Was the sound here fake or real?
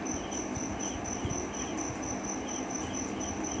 real